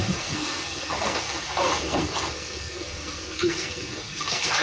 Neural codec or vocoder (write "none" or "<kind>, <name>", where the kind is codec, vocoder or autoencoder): codec, SNAC